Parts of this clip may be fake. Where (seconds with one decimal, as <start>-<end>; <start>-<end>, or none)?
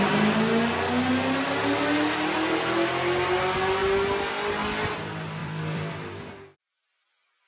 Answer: 5.4-5.9